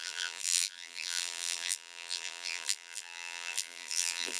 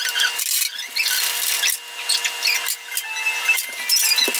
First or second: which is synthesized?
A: first